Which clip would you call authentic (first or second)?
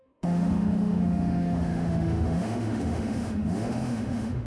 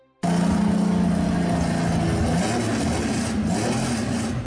second